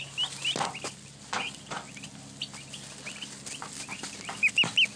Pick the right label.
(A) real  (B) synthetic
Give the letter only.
A